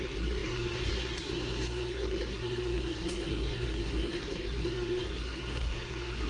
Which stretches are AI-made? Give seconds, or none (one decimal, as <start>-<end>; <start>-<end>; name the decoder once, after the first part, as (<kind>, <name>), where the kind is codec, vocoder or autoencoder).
0.0-6.3 (codec, SNAC)